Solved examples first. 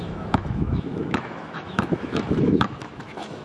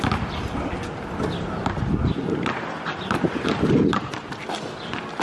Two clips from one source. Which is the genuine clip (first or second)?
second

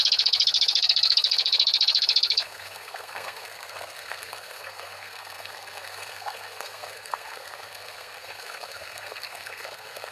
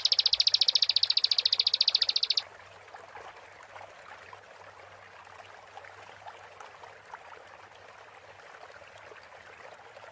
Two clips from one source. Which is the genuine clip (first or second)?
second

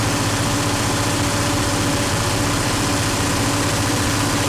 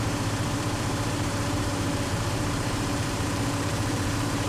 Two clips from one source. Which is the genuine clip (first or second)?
first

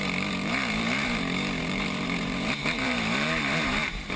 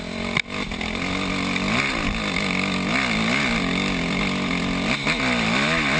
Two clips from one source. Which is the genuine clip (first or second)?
second